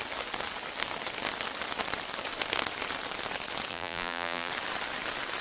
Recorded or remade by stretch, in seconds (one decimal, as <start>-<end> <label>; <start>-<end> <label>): 0.0-3.7 recorded; 3.7-4.5 remade; 4.5-5.4 recorded